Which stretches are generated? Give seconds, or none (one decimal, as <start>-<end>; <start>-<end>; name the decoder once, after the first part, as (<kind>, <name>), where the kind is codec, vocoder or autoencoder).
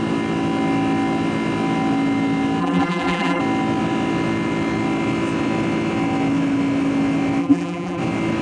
2.6-3.4 (vocoder, BigVGAN v2); 7.4-8.0